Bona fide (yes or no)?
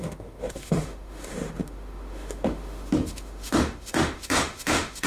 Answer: no